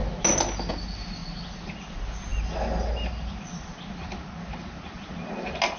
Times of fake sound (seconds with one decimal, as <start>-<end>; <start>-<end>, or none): none

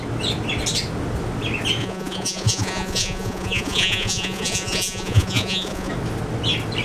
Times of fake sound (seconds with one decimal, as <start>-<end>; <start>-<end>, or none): 1.8-5.9

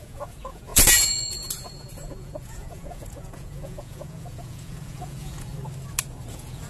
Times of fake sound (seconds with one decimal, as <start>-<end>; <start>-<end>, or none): 0.0-5.5; 6.3-6.7